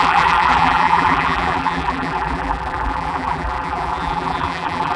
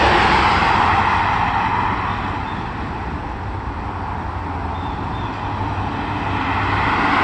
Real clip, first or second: second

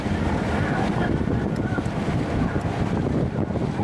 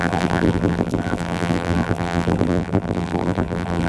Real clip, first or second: first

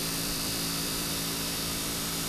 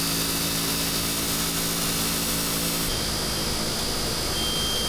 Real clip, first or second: second